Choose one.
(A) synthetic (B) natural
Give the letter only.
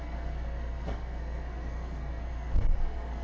A